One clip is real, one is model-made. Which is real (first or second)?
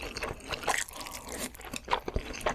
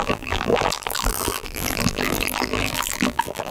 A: first